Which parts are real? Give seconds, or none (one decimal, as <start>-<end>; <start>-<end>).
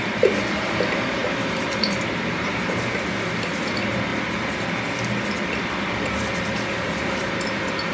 4.1-6.7